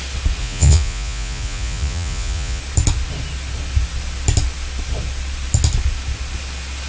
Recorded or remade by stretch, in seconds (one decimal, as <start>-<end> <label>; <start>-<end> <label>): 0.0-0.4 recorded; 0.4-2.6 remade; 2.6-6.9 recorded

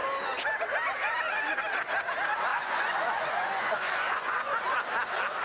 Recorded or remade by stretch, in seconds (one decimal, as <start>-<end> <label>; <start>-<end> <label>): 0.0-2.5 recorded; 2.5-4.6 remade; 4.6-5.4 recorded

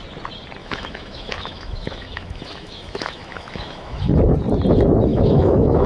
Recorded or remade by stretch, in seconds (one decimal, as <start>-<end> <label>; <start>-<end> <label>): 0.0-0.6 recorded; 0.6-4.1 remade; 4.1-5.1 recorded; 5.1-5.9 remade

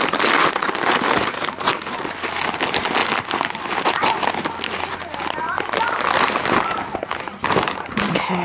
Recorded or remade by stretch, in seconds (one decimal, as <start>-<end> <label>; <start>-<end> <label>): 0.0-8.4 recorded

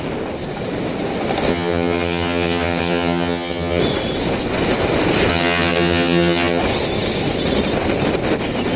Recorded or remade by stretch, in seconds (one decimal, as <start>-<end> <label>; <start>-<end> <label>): 0.0-1.5 recorded; 1.5-3.8 remade; 3.8-5.3 recorded; 5.3-6.6 remade; 6.6-8.8 recorded

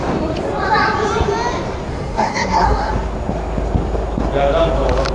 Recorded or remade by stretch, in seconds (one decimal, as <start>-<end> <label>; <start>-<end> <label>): 0.0-1.9 recorded; 1.9-2.9 remade; 2.9-5.1 recorded